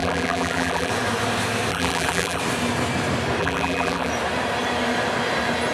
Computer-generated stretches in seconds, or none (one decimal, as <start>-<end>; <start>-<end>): 0.0-0.9; 1.7-2.4; 3.4-4.1